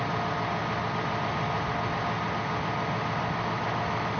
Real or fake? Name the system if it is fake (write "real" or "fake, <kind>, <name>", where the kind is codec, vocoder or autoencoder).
real